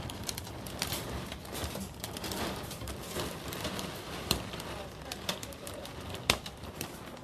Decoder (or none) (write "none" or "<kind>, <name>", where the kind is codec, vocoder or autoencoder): vocoder, BigVGAN v2